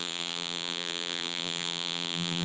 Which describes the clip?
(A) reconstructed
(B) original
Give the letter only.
A